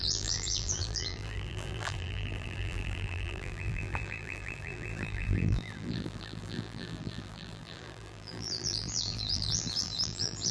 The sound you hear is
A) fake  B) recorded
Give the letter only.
A